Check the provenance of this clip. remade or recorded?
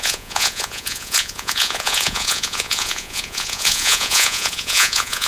remade